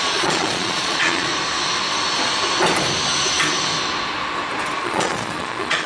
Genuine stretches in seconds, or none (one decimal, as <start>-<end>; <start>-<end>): 1.3-4.8